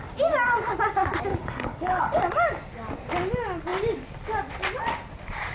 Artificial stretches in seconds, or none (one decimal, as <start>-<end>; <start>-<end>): 1.3-2.2